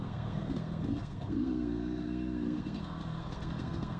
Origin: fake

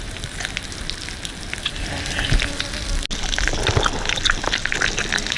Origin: real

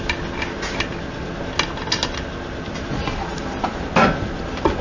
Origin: real